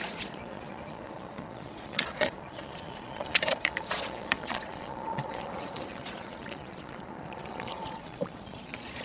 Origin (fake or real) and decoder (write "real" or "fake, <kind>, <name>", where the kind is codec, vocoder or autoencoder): fake, vocoder, Vocos